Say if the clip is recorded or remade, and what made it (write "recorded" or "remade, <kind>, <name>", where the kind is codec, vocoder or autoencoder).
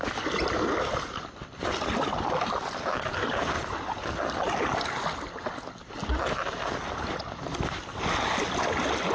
recorded